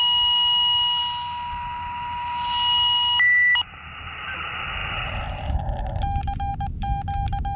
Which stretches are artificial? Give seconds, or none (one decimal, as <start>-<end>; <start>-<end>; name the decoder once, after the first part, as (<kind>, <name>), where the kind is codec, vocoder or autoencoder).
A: none